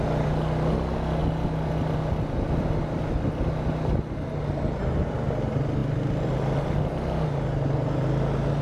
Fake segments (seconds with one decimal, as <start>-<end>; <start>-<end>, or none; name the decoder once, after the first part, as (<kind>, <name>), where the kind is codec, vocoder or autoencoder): none